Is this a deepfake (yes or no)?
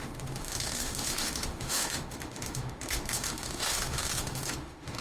yes